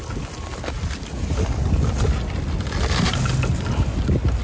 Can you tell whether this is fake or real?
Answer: real